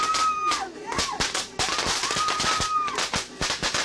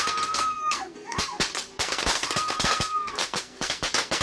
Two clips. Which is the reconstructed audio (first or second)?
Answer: second